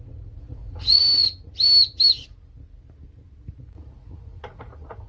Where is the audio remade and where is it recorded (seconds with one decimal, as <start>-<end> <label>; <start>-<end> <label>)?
0.0-1.0 remade; 1.0-3.6 recorded; 3.6-5.1 remade